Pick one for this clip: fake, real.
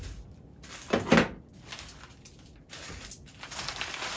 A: real